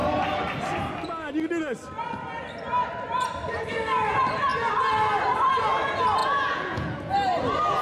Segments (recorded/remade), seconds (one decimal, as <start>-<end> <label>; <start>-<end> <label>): 0.0-6.2 recorded; 6.2-7.1 remade; 7.1-7.8 recorded